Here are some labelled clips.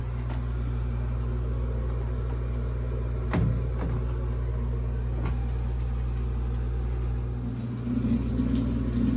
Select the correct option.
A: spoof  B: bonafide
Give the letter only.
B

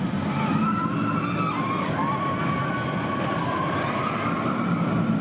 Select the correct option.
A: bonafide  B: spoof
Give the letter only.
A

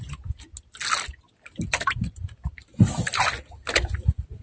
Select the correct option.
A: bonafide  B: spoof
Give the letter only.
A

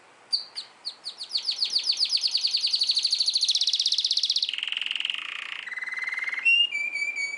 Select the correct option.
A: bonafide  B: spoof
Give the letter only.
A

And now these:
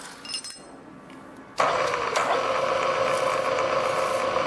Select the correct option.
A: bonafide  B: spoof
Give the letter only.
A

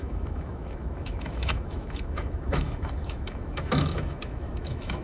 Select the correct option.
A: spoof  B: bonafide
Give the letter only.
A